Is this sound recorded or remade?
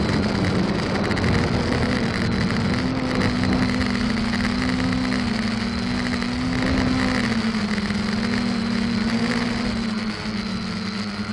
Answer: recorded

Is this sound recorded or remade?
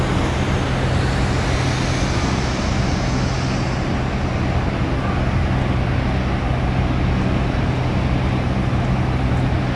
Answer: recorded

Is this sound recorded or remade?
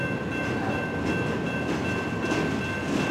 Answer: recorded